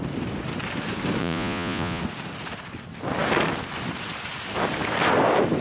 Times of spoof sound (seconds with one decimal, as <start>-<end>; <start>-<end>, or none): 1.2-2.0